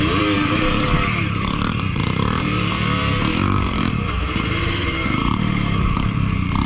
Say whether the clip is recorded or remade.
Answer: remade